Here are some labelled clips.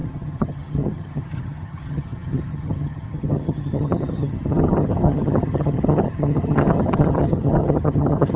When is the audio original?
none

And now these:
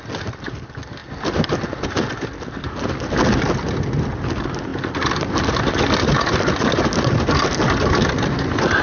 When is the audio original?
0.0-8.8

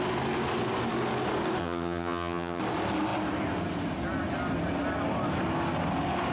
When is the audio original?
0.0-1.6; 2.6-6.3

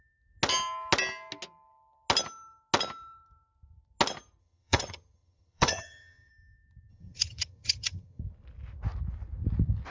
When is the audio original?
0.0-4.4; 6.3-6.9; 8.2-9.9

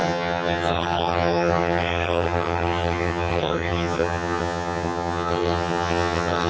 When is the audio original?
none

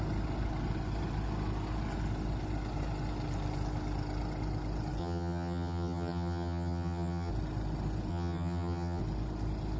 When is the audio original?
0.0-5.0; 7.3-8.1; 9.0-9.8

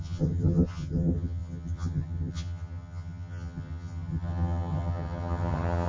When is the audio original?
none